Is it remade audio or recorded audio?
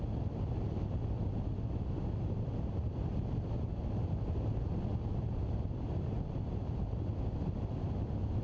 recorded